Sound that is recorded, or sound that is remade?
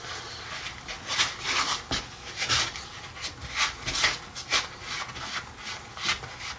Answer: recorded